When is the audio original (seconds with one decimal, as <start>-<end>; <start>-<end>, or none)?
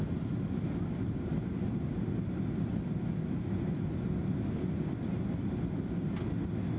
0.0-6.8